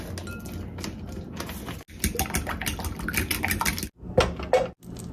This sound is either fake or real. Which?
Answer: real